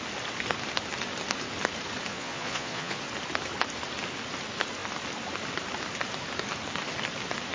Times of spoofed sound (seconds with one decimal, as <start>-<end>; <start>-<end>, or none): 2.1-3.0

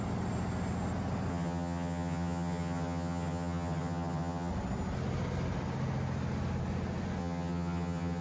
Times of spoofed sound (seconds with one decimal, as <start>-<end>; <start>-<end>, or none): 1.3-4.5; 7.2-8.2

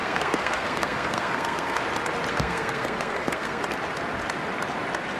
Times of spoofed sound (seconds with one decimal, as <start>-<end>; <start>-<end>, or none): 0.0-1.8; 2.3-3.6

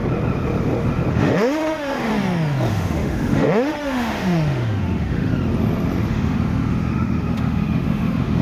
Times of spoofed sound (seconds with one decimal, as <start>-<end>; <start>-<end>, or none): 1.1-2.1; 2.7-5.3; 6.1-8.4

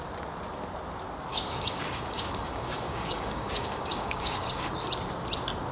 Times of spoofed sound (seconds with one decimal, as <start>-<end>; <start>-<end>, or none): 1.3-4.7

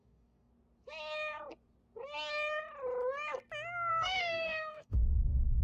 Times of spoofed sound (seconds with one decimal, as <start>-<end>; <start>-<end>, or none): 0.0-0.5; 3.9-5.6

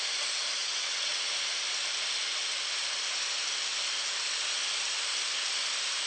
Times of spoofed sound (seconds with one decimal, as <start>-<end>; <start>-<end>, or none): 0.6-1.2

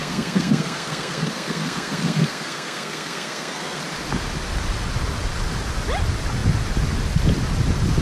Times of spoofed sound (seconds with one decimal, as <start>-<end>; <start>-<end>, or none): 0.0-3.8